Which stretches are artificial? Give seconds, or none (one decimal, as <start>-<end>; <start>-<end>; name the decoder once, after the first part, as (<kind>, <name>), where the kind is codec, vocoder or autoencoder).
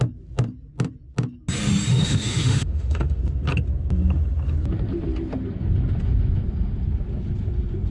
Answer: 1.9-3.2 (autoencoder, DAC-VAE)